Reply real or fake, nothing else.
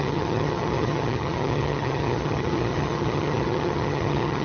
fake